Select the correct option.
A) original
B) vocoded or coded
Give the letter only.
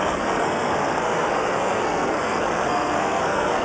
B